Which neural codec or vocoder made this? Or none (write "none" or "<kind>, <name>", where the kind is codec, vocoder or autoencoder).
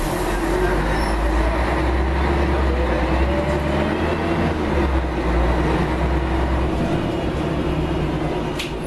none